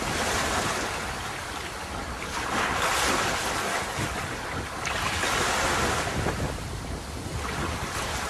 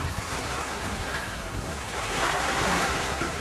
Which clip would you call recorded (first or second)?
first